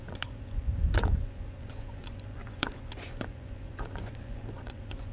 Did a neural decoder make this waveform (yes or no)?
yes